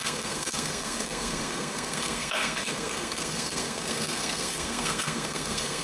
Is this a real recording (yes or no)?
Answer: no